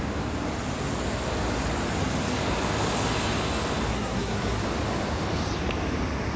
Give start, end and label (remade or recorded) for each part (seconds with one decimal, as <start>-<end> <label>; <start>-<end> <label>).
0.0-3.9 recorded; 3.9-4.6 remade; 4.6-6.4 recorded